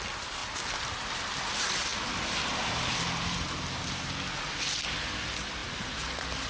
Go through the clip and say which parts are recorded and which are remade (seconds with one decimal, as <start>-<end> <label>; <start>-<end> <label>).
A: 0.0-5.6 recorded; 5.6-6.5 remade